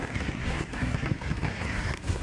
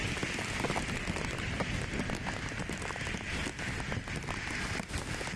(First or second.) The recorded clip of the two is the second